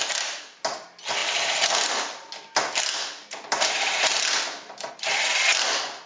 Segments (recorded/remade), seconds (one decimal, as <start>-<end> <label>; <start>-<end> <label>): 0.0-6.1 recorded